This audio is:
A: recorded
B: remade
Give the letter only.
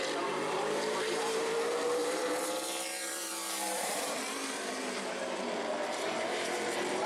B